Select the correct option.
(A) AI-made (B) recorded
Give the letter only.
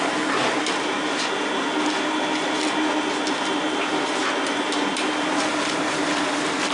B